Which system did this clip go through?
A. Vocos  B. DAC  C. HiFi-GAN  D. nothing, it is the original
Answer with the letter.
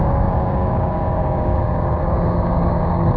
B